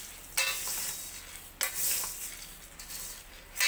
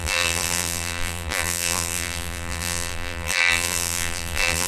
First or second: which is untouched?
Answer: first